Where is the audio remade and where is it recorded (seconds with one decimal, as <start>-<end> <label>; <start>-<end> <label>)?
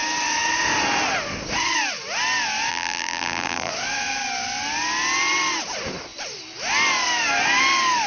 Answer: 0.0-2.7 recorded; 2.7-3.7 remade; 3.7-8.1 recorded